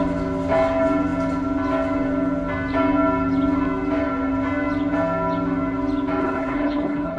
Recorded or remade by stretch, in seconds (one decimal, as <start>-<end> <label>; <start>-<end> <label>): 0.0-6.2 recorded; 6.2-7.2 remade